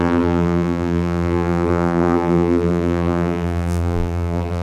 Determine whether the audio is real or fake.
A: fake